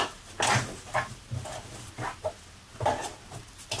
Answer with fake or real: real